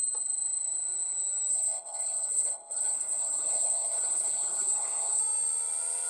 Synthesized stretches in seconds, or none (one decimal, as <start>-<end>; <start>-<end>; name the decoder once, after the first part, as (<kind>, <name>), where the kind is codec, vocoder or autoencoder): 1.5-5.2 (codec, HILCodec)